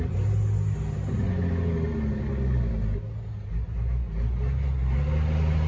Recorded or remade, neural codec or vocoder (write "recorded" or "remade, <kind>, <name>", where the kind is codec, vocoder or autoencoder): recorded